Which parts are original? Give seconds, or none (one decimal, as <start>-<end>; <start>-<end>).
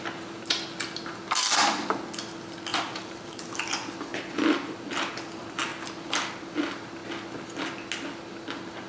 0.0-2.7; 3.4-8.9